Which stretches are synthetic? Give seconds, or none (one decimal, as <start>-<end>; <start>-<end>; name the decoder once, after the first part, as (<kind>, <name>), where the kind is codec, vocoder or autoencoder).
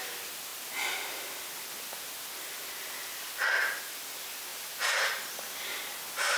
none